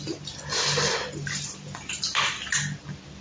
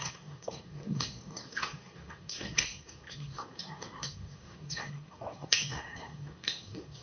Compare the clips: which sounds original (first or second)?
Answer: first